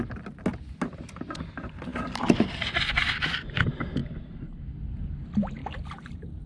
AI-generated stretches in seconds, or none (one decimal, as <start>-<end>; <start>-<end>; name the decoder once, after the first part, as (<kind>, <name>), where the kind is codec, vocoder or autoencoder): 1.9-2.5 (vocoder, BigVGAN v2)